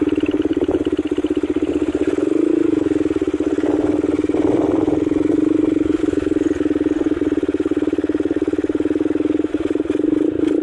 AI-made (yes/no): no